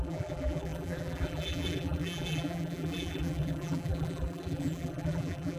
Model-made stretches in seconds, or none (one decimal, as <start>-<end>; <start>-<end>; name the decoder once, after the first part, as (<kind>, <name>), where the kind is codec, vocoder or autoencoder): 0.0-5.6 (vocoder, BigVGAN v2)